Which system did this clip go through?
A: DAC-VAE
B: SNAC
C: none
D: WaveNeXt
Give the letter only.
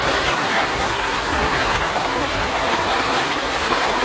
B